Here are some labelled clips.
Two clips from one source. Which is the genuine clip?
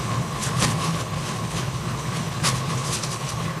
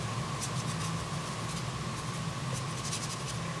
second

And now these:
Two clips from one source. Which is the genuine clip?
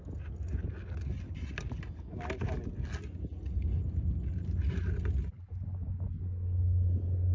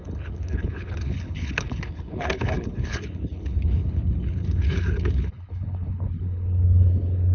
first